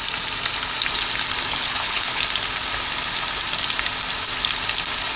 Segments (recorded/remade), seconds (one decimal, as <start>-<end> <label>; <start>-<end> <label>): 0.0-1.5 recorded; 1.5-2.2 remade; 2.2-5.2 recorded